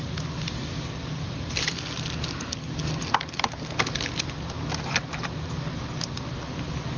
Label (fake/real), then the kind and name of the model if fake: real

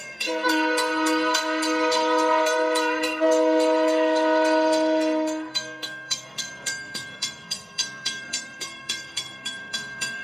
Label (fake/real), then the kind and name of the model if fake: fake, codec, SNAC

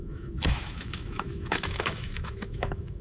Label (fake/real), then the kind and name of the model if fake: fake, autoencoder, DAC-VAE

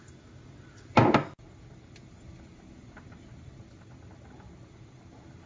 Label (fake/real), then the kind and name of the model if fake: real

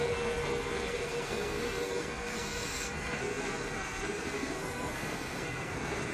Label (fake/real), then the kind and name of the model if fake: fake, codec, SNAC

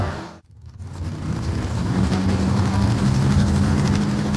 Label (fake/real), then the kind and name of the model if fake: fake, codec, DAC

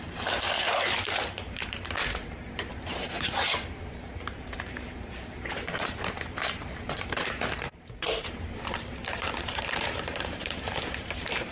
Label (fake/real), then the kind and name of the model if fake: fake, vocoder, BigVGAN v2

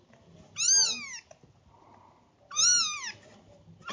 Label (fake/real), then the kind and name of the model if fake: real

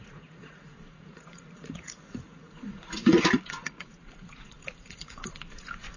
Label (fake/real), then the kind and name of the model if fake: fake, vocoder, Vocos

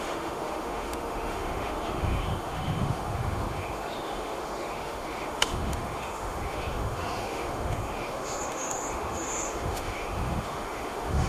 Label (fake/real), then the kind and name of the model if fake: fake, autoencoder, DAC-VAE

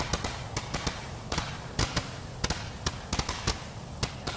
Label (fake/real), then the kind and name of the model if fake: real